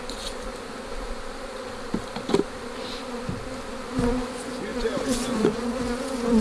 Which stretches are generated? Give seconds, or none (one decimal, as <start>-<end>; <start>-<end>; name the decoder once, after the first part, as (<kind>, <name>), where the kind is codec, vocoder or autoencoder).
0.0-0.5 (vocoder, Vocos); 4.3-6.4